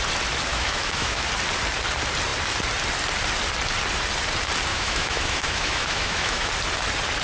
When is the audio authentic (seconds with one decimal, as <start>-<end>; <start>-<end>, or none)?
0.0-0.5; 1.3-4.7; 6.5-7.2